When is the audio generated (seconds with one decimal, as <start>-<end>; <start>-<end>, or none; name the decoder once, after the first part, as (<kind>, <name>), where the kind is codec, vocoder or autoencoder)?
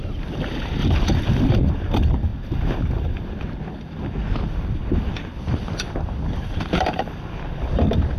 none